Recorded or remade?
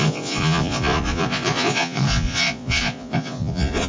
remade